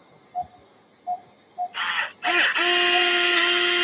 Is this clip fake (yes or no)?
no